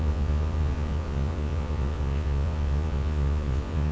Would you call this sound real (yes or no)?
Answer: no